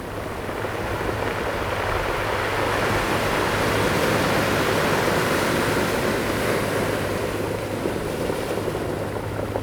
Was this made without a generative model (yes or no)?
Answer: yes